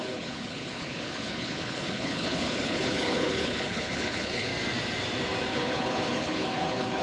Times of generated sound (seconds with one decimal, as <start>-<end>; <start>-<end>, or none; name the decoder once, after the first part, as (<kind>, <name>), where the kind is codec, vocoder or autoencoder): 0.0-4.5 (codec, HILCodec); 5.5-7.0